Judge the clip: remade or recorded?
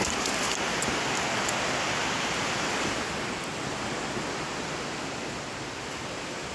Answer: recorded